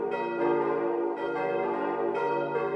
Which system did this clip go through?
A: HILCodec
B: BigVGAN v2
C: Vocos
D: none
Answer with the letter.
D